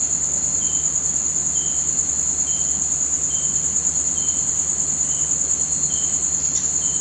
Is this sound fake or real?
real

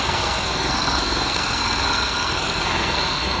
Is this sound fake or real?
fake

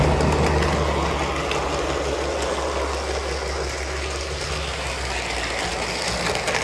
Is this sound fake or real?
real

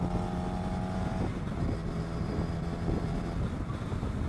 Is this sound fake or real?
real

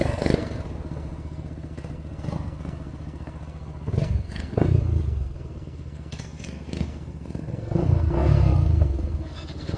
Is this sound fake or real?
fake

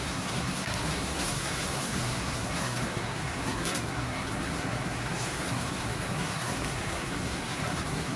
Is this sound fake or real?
fake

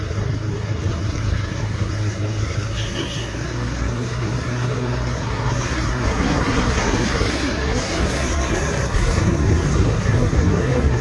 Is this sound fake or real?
fake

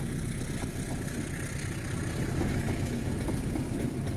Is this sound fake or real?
real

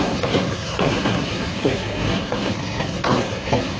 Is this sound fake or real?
fake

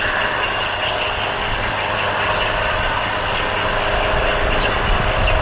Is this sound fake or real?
real